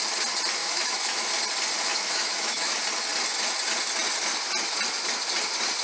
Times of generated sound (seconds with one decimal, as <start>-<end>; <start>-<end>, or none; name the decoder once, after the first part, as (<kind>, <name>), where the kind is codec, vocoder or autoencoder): 0.6-1.3 (autoencoder, DAC-VAE); 1.9-2.8